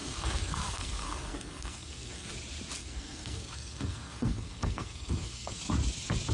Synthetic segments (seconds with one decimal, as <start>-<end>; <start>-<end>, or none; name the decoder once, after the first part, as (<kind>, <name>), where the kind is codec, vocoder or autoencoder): 0.0-2.3 (codec, SNAC); 2.8-5.6